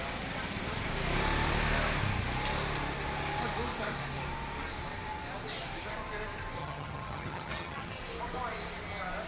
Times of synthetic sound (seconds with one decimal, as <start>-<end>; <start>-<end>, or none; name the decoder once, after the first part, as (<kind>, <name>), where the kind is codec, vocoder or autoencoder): 6.6-8.0 (vocoder, HiFi-GAN)